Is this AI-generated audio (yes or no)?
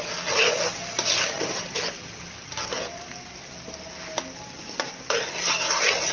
no